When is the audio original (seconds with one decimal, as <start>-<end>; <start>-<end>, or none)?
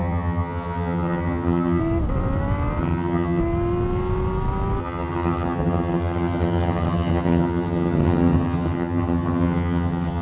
1.8-2.8; 3.4-4.8